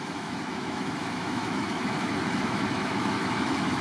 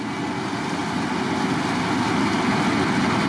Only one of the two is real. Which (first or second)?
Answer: second